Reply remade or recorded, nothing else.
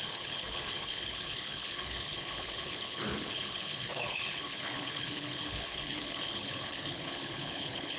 remade